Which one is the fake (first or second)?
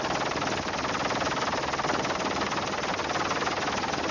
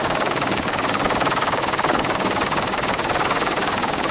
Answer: second